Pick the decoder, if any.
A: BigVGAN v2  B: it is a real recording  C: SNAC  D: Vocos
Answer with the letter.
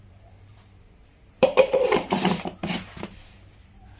A